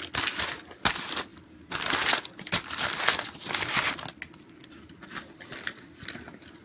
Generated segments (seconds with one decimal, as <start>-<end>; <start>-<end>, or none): none